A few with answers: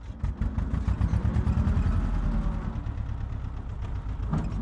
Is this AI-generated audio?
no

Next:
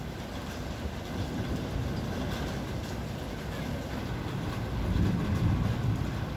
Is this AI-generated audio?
no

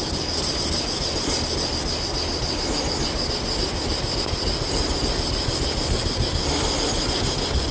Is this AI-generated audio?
no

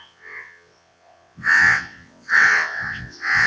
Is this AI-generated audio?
yes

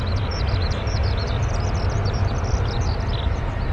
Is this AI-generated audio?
no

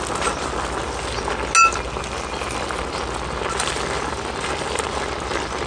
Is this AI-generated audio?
no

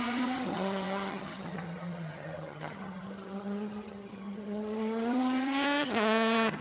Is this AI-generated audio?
yes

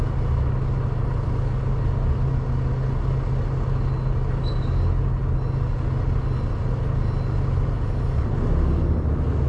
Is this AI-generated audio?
no